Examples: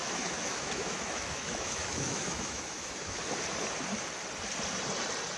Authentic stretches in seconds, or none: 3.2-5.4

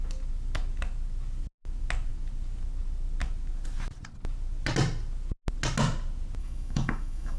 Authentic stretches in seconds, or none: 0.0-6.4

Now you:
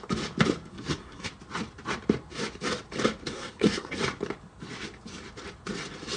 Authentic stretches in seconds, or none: 0.0-0.7; 1.3-3.3; 4.0-6.2

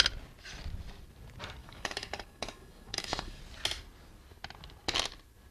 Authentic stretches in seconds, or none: 0.0-1.6; 3.4-5.5

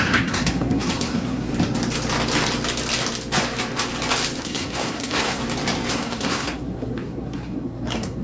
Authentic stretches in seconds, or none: 1.5-4.4; 5.4-5.9

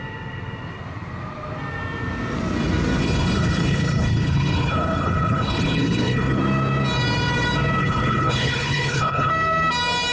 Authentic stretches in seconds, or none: 0.0-3.0; 6.4-7.8; 9.3-10.1

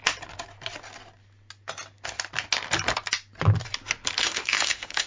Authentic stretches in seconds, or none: 0.0-4.2

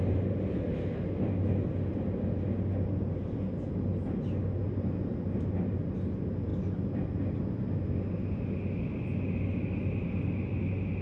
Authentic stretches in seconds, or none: 0.0-11.0